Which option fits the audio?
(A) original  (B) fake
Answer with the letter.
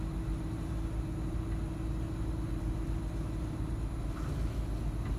A